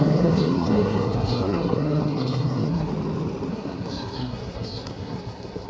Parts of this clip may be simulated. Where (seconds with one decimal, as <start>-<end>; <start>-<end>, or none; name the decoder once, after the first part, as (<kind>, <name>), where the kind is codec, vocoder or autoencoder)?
0.0-2.9 (codec, SNAC); 3.5-5.7